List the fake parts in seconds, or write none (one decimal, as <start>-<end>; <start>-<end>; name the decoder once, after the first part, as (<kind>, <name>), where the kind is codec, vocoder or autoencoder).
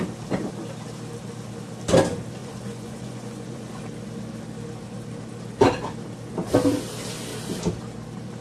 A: 2.4-3.8 (vocoder, Vocos)